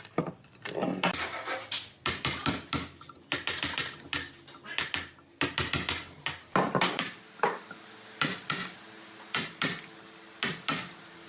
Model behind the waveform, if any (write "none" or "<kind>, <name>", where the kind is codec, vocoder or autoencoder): none